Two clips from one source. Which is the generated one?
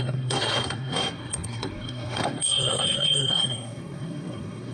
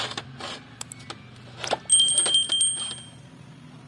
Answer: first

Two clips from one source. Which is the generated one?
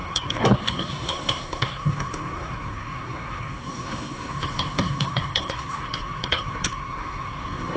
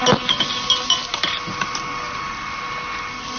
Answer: first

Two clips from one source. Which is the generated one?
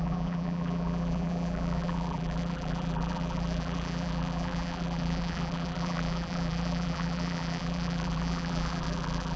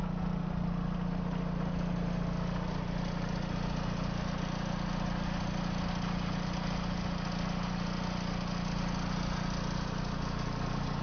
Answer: first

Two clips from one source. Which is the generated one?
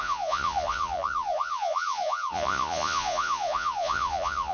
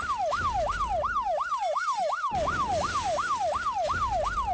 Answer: first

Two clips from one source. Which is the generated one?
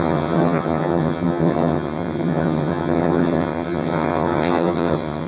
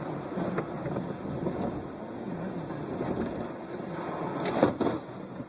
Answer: first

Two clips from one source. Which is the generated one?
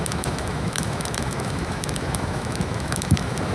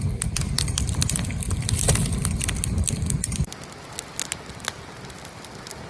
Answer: first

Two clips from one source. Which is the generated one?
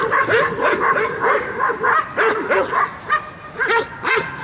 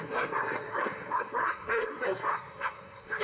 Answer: second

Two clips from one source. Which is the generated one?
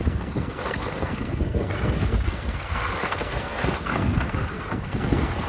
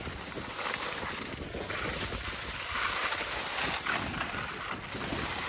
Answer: first